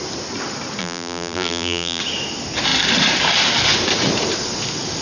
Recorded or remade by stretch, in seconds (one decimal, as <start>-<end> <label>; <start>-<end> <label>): 0.0-0.8 recorded; 0.8-2.0 remade; 2.0-5.0 recorded